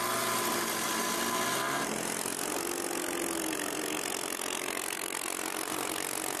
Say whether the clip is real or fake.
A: real